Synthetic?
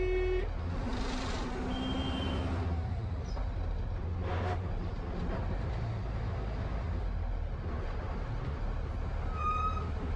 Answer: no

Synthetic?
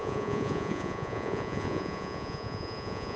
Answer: yes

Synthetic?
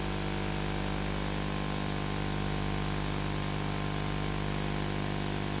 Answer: no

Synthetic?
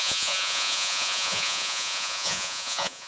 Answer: yes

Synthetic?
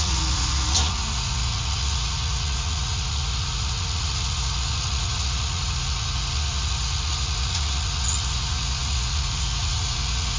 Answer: yes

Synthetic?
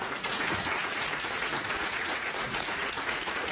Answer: yes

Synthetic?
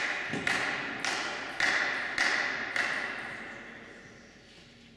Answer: no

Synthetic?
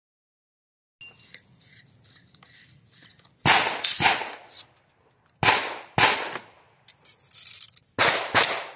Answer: no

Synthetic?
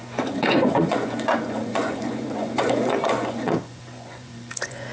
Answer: yes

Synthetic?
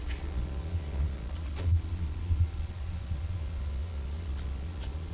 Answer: yes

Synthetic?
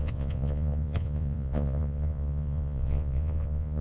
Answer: yes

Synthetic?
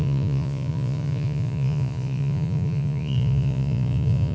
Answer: yes